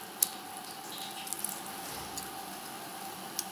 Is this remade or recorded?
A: recorded